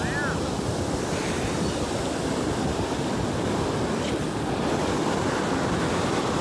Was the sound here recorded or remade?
recorded